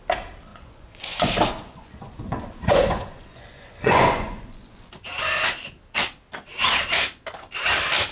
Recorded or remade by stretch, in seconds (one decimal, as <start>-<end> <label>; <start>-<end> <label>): 0.0-0.5 recorded; 0.5-4.9 remade; 4.9-8.1 recorded